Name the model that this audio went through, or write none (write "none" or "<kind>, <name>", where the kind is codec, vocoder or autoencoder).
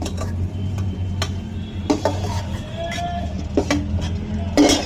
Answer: none